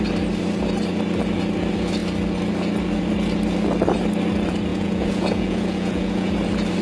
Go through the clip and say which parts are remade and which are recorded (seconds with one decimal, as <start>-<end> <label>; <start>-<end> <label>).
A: 0.0-4.7 recorded; 4.7-6.3 remade; 6.3-6.8 recorded